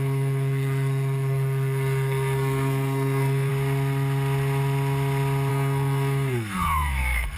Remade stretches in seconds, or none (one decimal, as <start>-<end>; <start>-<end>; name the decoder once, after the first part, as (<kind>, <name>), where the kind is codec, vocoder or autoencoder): 0.0-3.5 (codec, SNAC); 5.5-7.4